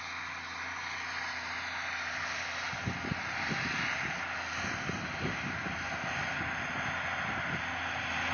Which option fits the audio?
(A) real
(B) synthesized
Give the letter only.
A